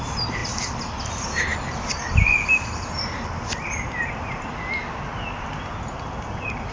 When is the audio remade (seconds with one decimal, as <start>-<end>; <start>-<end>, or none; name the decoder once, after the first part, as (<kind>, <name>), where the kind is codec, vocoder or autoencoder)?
none